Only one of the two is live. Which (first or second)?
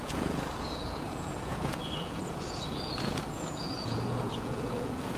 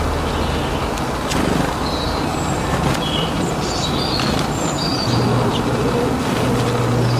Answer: second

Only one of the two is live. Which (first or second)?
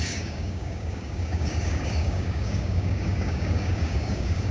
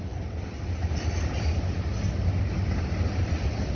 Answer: second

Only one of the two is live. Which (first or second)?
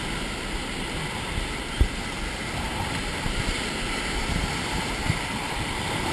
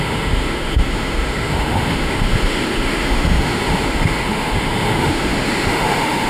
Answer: first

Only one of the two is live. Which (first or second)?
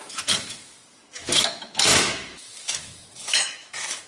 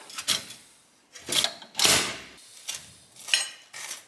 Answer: second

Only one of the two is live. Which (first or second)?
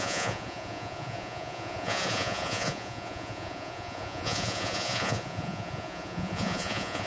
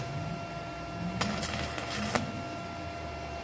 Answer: second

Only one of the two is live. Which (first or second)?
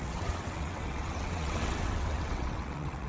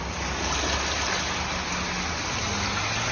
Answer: second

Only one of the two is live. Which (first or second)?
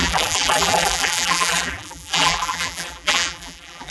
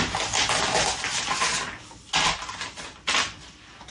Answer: second